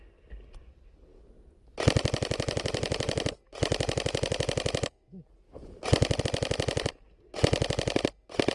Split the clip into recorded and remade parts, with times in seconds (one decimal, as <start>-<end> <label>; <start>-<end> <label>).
0.0-8.5 recorded